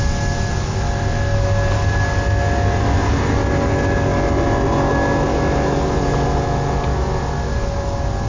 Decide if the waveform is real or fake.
real